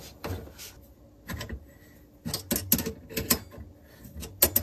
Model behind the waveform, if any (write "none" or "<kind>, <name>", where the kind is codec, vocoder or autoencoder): none